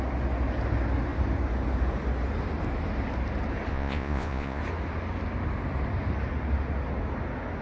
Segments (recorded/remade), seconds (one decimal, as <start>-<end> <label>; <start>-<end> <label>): 0.0-3.7 recorded; 3.7-4.6 remade; 4.6-7.6 recorded